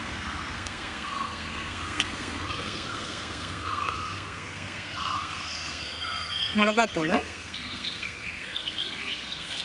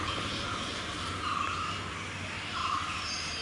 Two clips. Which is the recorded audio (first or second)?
second